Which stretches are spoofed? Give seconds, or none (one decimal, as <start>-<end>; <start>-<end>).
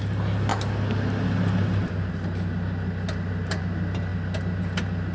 none